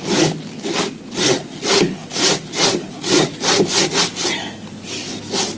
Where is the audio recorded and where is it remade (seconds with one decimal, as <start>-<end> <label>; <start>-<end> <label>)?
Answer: 0.0-5.6 recorded